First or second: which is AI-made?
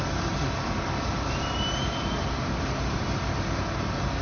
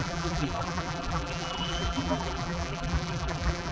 second